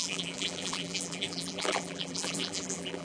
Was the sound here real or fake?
fake